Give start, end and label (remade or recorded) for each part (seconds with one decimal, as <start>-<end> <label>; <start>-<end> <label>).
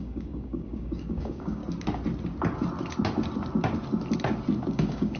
0.0-1.6 remade; 1.6-4.7 recorded; 4.7-5.2 remade